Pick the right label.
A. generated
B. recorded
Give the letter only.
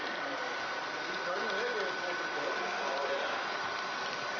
B